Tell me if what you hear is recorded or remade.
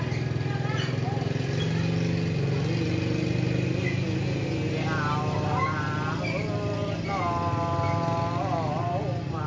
recorded